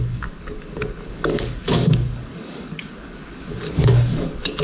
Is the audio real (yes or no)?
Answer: no